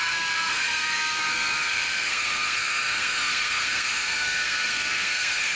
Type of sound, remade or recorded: remade